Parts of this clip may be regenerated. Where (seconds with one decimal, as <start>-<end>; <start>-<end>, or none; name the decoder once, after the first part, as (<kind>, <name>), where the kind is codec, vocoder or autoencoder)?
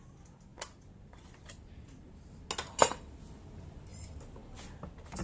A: none